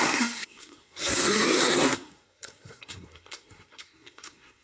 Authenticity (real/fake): fake